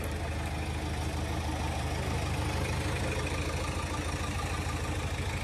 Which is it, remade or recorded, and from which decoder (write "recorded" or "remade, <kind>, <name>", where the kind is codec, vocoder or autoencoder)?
recorded